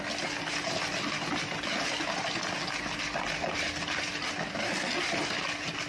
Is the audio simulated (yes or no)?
no